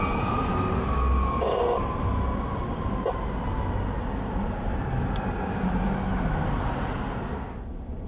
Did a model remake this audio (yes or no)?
no